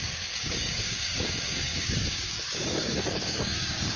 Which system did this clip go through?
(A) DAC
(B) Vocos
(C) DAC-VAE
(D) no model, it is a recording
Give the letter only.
A